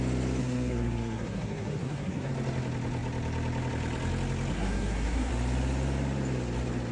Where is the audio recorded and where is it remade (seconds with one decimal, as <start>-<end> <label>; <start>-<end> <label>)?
0.0-0.4 recorded; 0.4-2.3 remade; 2.3-4.5 recorded; 4.5-5.3 remade; 5.3-6.9 recorded